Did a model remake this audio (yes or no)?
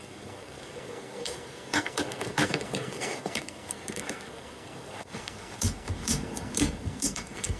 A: yes